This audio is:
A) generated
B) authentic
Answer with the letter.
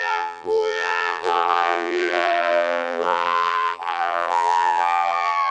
A